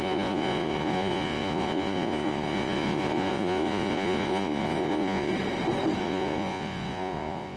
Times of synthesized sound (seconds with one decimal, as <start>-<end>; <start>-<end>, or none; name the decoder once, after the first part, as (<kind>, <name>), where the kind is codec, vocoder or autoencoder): 0.0-5.3 (vocoder, Vocos); 6.0-7.6